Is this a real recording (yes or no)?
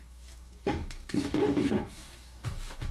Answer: no